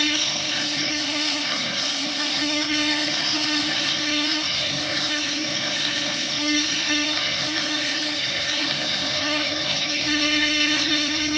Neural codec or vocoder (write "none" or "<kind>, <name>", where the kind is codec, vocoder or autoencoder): codec, SNAC